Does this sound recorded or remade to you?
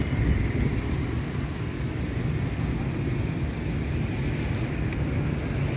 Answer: recorded